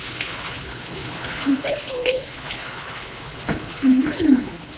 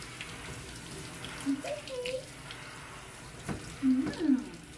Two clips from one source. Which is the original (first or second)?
second